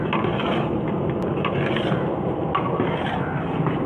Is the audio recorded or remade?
recorded